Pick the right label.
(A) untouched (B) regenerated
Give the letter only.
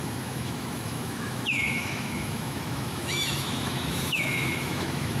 B